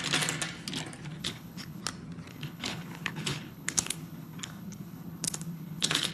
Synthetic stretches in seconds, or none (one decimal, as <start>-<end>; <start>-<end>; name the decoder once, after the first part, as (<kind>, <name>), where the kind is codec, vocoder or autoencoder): 1.2-1.8 (codec, HILCodec); 2.3-6.1